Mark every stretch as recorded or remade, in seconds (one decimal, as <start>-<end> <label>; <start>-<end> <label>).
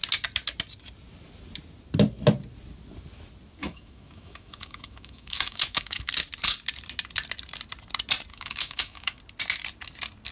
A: 0.0-3.6 recorded; 3.6-6.1 remade; 6.1-8.3 recorded; 8.3-9.2 remade; 9.2-10.3 recorded